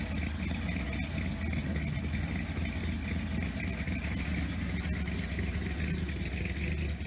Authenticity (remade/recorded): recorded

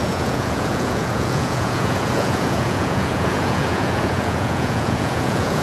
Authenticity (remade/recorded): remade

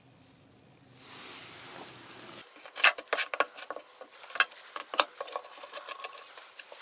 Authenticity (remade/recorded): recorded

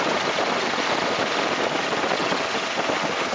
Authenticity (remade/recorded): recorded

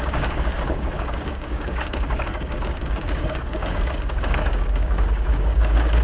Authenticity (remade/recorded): remade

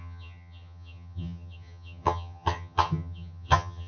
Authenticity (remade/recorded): remade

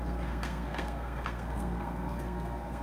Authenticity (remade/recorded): remade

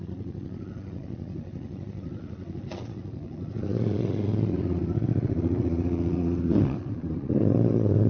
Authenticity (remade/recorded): remade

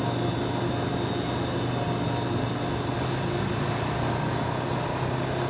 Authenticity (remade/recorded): recorded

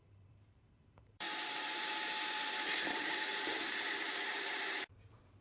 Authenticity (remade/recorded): remade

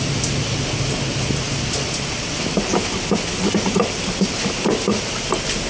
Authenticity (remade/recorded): recorded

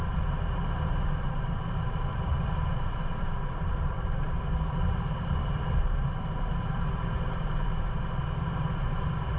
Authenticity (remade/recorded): remade